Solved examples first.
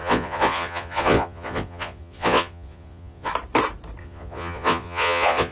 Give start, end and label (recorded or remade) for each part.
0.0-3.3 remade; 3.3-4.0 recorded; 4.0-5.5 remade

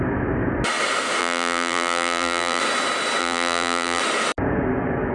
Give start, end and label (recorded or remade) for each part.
0.0-1.2 recorded; 1.2-2.6 remade; 2.6-3.2 recorded; 3.2-4.0 remade; 4.0-5.1 recorded

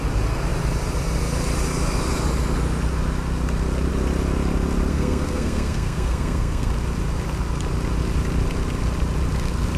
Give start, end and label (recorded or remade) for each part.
0.0-4.9 recorded; 4.9-6.7 remade; 6.7-9.8 recorded

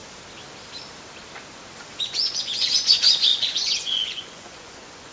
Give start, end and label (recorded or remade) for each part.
0.0-2.0 recorded; 2.0-5.1 remade

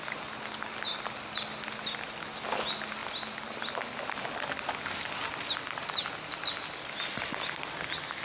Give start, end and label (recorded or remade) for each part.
0.0-8.2 recorded